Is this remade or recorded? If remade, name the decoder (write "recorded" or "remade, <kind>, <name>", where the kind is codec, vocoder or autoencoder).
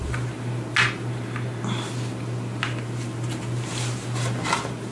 recorded